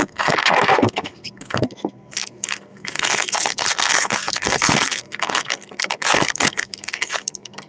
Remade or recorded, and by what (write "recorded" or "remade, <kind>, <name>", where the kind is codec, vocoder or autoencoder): remade, codec, SNAC